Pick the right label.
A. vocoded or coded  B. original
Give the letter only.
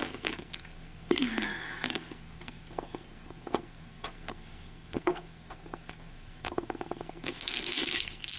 A